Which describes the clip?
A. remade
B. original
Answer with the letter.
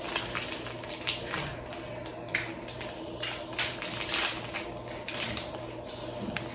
B